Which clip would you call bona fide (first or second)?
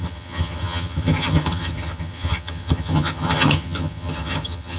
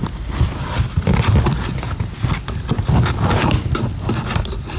second